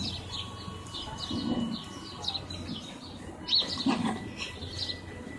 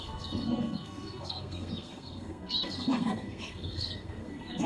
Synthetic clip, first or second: second